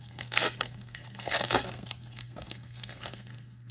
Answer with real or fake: fake